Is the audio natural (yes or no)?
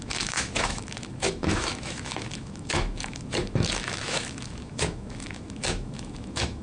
no